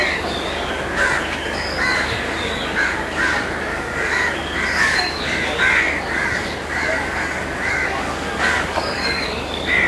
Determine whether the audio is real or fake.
fake